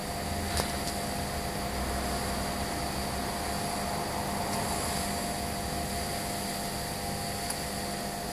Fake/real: real